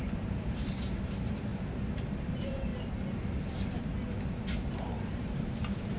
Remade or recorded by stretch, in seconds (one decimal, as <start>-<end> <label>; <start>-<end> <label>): 0.0-1.5 remade; 1.5-2.1 recorded; 2.1-2.7 remade; 2.7-3.2 recorded; 3.2-3.9 remade; 3.9-4.7 recorded; 4.7-6.0 remade